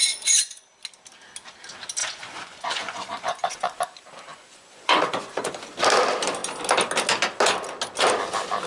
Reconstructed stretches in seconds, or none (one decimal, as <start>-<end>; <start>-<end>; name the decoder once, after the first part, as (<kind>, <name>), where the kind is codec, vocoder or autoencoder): 0.0-0.7 (vocoder, Vocos); 2.0-3.8; 4.3-5.5